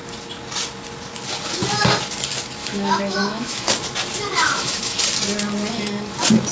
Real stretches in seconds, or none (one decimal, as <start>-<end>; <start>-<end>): 0.0-2.6; 3.7-4.3; 5.0-6.5

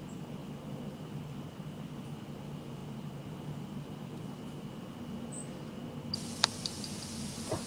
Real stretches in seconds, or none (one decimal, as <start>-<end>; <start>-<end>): 0.0-0.4; 1.9-2.8; 4.9-7.7